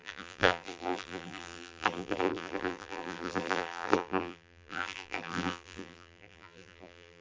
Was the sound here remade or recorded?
remade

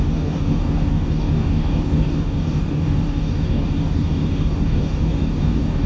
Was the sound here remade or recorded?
remade